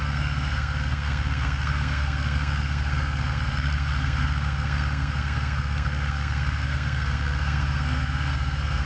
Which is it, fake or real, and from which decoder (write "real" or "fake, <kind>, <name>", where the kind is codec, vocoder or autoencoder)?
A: fake, codec, SNAC